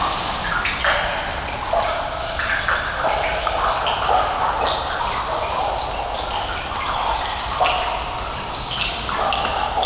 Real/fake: real